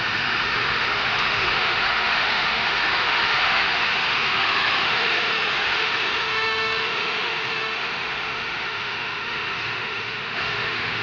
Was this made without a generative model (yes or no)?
no